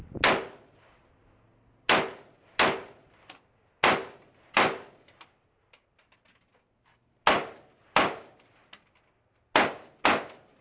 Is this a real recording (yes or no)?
yes